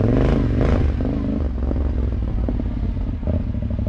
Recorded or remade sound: recorded